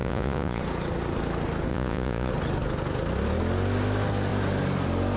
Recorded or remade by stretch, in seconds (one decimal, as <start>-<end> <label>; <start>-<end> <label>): 0.0-0.6 remade; 0.6-1.7 recorded; 1.7-2.3 remade; 2.3-5.2 recorded